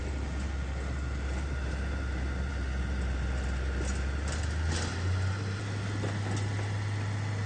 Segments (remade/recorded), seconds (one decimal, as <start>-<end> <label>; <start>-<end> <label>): 0.0-7.5 recorded